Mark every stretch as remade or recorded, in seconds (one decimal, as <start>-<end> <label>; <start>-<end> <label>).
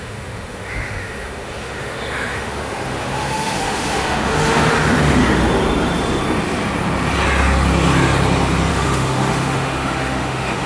0.0-5.2 remade; 5.2-8.7 recorded; 8.7-10.7 remade